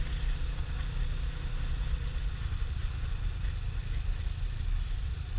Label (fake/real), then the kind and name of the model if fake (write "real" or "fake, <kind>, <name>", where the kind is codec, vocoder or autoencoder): real